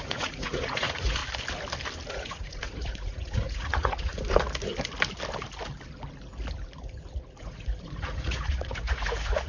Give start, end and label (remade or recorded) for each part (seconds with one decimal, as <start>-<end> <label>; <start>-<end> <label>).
0.0-1.2 remade; 1.2-2.1 recorded; 2.1-4.1 remade; 4.1-7.4 recorded; 7.4-9.5 remade